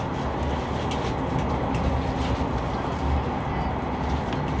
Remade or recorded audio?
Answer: recorded